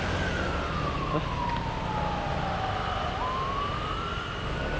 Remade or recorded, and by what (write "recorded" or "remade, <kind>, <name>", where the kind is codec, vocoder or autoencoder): recorded